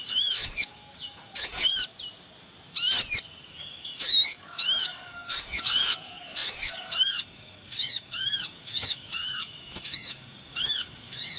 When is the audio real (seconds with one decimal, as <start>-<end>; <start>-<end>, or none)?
1.7-3.5